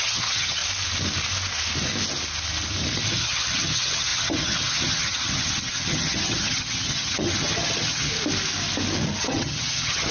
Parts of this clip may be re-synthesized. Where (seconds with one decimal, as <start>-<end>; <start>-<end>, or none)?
0.0-0.6; 3.1-8.1; 9.2-10.1